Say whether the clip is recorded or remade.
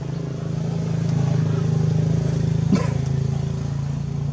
recorded